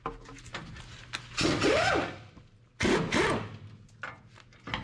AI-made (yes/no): no